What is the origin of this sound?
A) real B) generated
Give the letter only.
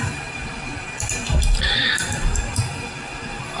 A